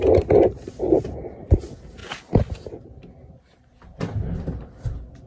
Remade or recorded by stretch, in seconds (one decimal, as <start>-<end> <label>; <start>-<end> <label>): 0.0-5.3 recorded